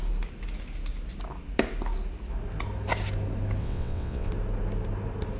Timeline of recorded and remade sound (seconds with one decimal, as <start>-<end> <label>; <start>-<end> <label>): 0.0-3.6 recorded; 3.6-4.3 remade; 4.3-5.4 recorded

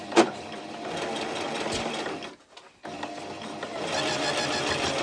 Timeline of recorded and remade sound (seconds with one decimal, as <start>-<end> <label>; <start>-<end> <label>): 0.0-3.0 remade; 3.0-5.0 recorded

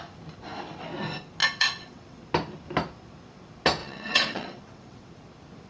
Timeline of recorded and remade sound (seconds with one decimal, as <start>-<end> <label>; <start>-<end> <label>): 0.0-1.4 recorded; 1.4-2.2 remade; 2.2-3.8 recorded; 3.8-5.1 remade; 5.1-5.7 recorded

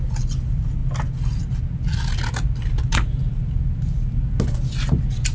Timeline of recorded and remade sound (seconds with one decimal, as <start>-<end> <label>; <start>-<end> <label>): 0.0-5.3 recorded

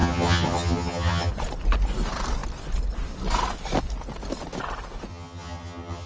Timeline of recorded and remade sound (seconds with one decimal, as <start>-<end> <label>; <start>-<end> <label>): 0.0-1.3 remade; 1.3-5.1 recorded; 5.1-6.1 remade